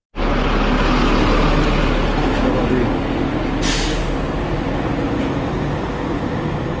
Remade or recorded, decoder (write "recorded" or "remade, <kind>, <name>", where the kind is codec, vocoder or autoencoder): recorded